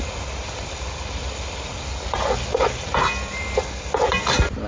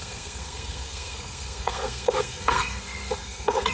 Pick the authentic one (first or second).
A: first